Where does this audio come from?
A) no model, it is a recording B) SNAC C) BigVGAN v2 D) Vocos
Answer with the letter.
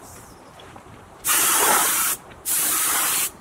C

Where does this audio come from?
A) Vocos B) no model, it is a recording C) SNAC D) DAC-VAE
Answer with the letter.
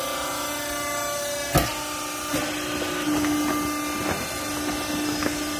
B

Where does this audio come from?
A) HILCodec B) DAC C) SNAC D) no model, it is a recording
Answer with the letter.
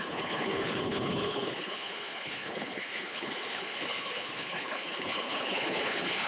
A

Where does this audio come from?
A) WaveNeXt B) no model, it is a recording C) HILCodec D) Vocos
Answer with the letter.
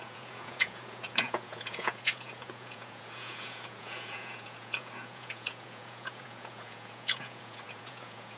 D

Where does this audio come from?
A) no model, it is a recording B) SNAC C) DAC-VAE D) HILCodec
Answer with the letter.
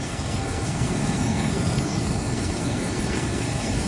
B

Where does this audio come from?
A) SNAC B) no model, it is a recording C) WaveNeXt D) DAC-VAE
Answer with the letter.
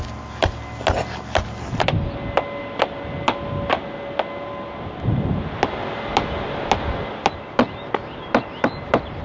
B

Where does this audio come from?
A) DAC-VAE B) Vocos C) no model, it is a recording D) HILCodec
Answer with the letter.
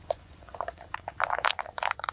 B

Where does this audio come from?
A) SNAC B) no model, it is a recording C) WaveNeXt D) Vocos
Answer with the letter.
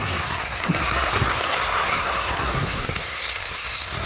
A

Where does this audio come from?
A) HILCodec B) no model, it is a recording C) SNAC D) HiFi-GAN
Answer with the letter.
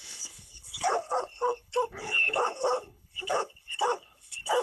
A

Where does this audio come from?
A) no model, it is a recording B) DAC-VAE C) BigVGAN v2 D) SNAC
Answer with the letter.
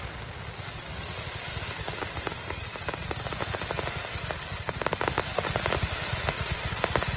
A